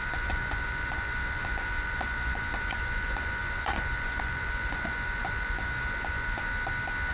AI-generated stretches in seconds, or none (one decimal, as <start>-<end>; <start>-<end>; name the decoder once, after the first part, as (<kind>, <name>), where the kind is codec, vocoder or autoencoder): 0.0-6.5 (vocoder, Vocos)